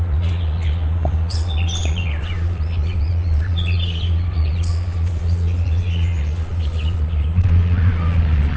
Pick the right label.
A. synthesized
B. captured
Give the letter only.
A